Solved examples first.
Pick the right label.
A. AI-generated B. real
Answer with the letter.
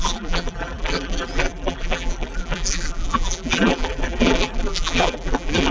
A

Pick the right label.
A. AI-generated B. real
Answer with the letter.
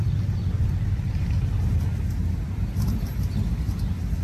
B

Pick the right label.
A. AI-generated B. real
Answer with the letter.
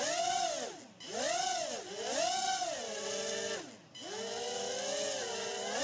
B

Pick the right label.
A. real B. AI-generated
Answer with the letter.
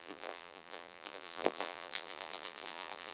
B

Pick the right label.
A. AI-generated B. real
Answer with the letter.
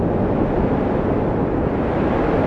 A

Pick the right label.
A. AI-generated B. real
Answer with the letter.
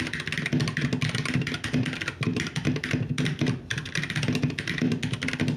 B